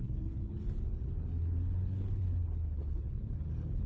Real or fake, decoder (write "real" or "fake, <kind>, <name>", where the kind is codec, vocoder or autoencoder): fake, codec, HILCodec